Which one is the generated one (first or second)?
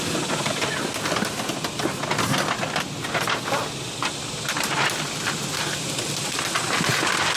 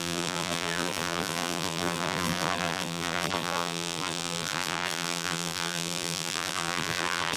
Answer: second